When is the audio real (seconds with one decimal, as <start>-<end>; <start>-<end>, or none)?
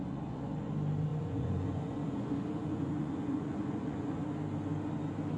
0.7-1.1; 4.3-5.4